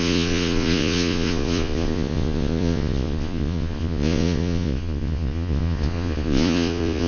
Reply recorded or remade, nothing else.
remade